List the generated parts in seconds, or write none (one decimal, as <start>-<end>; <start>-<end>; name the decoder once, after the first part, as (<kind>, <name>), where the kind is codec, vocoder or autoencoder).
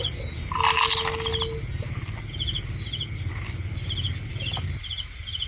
none